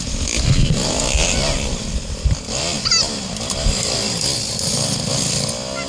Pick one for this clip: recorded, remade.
recorded